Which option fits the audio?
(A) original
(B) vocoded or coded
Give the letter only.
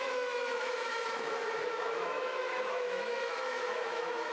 B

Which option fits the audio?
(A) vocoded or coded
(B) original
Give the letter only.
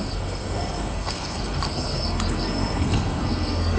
A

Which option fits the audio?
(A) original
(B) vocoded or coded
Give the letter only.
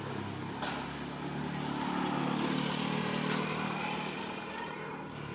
A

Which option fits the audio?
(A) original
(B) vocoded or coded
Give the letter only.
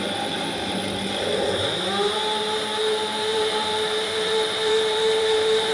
B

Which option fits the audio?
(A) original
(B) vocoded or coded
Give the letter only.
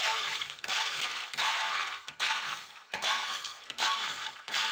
B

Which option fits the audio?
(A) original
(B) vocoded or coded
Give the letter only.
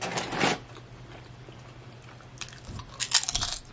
A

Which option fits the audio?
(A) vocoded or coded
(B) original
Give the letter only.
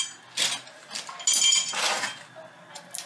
B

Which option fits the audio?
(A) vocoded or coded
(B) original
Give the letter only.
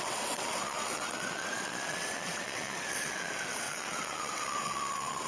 A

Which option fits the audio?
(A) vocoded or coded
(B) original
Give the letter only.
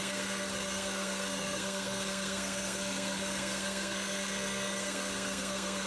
A